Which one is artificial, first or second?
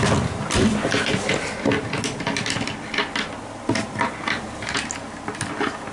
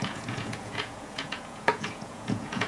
second